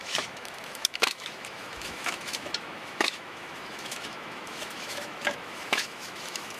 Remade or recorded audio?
remade